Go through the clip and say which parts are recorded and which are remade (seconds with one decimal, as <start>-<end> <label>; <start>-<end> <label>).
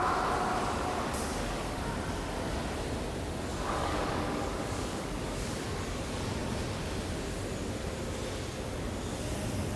0.0-1.3 recorded; 1.3-1.8 remade; 1.8-3.5 recorded; 3.5-6.0 remade; 6.0-9.8 recorded